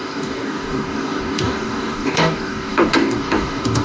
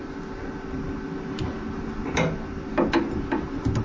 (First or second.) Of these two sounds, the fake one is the first